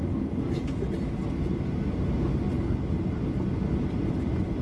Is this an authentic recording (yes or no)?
yes